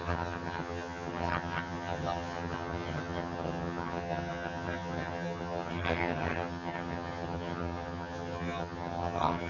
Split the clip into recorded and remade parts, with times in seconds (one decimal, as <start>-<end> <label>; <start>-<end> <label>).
0.0-9.5 remade